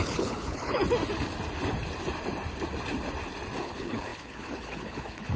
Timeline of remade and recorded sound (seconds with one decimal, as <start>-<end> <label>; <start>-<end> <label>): 0.0-0.8 remade; 0.8-3.6 recorded; 3.6-5.4 remade